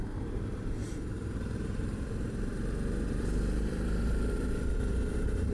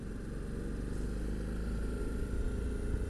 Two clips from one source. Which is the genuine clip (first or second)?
second